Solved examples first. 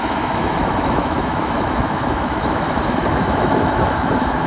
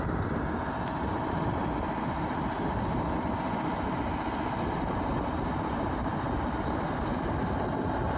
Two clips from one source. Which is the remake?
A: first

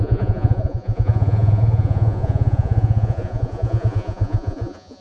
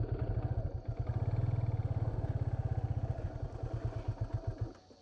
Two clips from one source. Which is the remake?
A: first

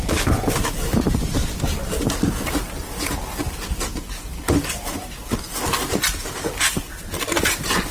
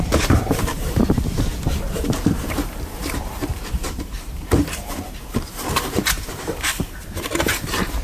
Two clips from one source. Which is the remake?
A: second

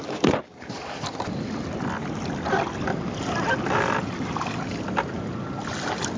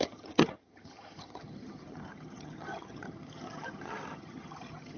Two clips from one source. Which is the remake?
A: second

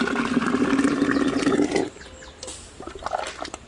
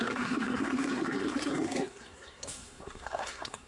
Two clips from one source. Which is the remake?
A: second